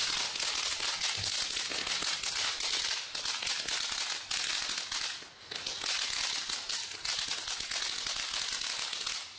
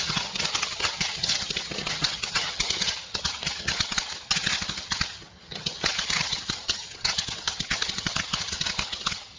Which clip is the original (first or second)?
first